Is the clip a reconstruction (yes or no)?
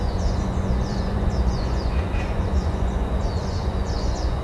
yes